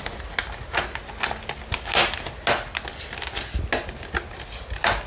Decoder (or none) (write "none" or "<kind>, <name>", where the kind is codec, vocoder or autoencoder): none